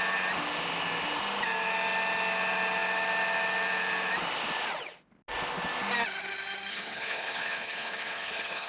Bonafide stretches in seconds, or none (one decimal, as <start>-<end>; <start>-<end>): 0.0-6.7

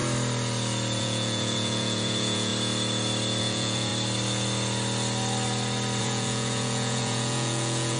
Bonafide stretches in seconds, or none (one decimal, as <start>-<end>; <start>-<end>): 0.0-1.0; 2.5-3.4; 3.9-6.0

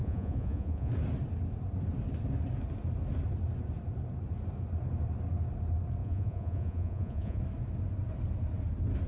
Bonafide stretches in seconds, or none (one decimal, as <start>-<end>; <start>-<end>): 0.9-6.0; 7.4-9.1

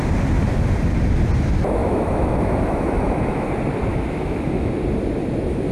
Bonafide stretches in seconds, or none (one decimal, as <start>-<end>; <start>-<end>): 0.0-1.8; 3.5-3.9; 4.7-5.7